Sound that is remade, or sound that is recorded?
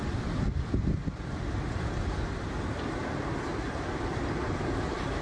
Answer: remade